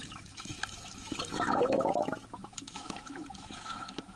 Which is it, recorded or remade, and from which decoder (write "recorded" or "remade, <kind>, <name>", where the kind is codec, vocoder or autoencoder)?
remade, autoencoder, DAC-VAE